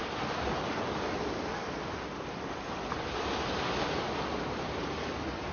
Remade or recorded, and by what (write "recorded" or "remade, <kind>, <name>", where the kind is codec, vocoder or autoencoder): recorded